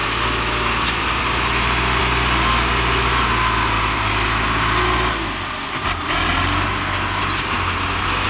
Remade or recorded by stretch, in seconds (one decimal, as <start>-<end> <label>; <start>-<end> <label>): 0.0-8.3 recorded